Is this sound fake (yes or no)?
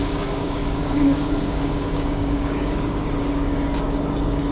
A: yes